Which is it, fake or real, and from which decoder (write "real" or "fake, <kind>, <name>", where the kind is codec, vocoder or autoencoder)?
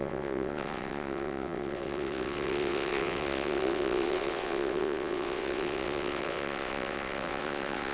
fake, vocoder, WaveNeXt